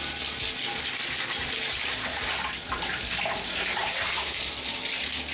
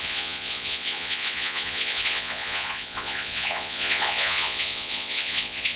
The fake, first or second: second